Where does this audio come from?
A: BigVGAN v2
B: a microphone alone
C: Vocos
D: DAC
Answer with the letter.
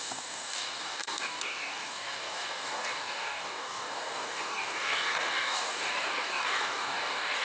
D